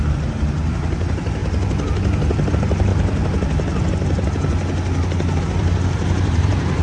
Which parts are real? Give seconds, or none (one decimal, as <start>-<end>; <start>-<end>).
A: 1.4-2.5; 2.9-5.4